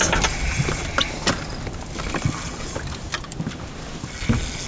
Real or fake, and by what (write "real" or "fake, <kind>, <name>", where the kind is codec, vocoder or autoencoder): real